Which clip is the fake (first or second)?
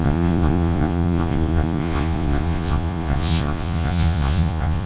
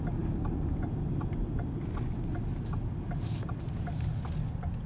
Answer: first